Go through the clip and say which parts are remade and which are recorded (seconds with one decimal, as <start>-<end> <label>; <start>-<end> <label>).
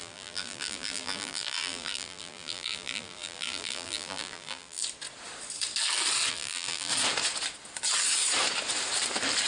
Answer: 0.0-4.8 remade; 4.8-6.3 recorded; 6.3-6.9 remade; 6.9-9.5 recorded